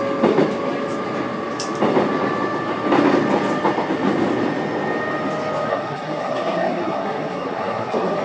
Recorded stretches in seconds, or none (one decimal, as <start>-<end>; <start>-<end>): 0.0-5.7